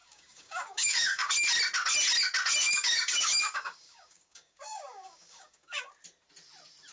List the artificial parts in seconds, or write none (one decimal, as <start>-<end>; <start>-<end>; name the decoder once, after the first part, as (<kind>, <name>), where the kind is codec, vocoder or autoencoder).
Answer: 0.0-1.3 (codec, DAC); 2.6-5.9